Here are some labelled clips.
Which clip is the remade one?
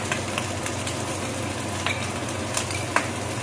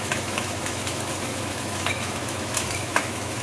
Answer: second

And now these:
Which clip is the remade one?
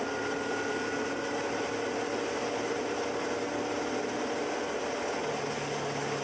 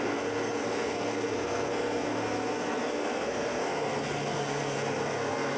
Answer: second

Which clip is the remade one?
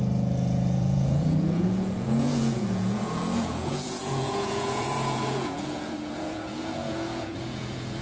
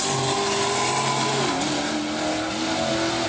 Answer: first